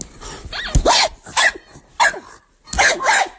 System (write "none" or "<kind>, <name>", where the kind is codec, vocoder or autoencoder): none